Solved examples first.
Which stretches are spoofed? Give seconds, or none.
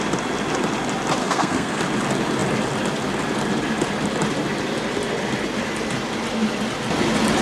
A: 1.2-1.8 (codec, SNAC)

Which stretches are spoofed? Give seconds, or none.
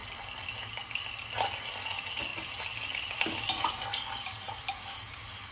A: none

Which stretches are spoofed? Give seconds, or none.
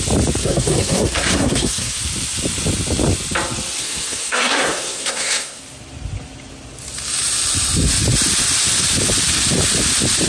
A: 0.4-2.0 (codec, SNAC); 3.8-5.6